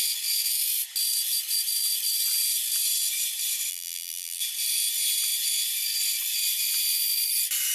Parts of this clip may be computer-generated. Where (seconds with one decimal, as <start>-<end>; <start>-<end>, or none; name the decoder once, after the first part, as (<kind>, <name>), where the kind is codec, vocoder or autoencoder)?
3.7-4.4 (vocoder, BigVGAN v2)